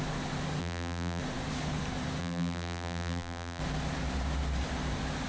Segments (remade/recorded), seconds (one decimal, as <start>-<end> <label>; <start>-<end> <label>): 0.0-0.6 recorded; 0.6-1.2 remade; 1.2-2.2 recorded; 2.2-3.6 remade; 3.6-5.3 recorded